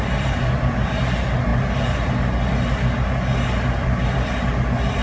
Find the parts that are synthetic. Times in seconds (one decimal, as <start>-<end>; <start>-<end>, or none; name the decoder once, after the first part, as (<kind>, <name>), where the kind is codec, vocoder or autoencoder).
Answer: none

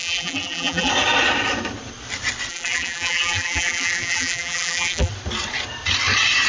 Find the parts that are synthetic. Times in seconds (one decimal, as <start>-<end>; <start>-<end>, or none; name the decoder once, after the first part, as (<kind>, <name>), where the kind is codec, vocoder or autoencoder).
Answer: 0.0-0.9 (vocoder, BigVGAN v2); 2.5-5.1

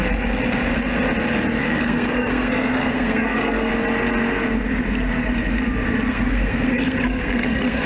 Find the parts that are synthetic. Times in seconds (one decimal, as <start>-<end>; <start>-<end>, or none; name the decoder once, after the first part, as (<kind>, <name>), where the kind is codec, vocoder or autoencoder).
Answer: 1.6-3.7 (codec, SNAC); 6.1-7.9

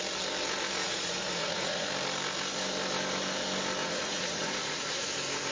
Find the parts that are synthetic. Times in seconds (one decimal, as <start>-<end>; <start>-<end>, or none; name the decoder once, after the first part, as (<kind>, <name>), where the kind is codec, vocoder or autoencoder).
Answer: 0.8-1.9 (vocoder, Vocos); 3.8-5.1

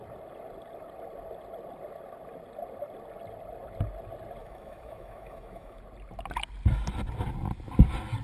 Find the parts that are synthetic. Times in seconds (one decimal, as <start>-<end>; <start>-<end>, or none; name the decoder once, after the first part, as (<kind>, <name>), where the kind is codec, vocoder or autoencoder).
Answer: 4.4-5.8 (autoencoder, DAC-VAE)

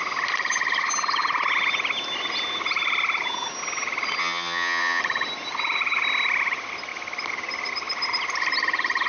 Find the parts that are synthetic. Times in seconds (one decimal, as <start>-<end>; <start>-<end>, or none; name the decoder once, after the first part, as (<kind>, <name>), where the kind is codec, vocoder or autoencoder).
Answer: 4.2-5.0 (vocoder, HiFi-GAN)

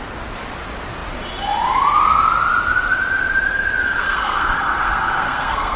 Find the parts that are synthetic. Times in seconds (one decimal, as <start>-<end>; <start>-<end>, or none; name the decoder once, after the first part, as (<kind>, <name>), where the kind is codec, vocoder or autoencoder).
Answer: 3.9-5.8 (codec, SNAC)

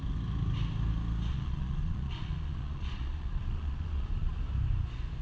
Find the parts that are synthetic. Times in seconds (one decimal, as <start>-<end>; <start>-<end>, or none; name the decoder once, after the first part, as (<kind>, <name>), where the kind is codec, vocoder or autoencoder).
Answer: 1.3-4.4 (vocoder, Vocos)